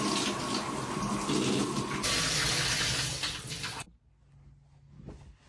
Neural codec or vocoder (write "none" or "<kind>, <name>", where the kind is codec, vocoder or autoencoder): none